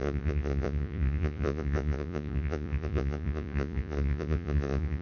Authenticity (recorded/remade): remade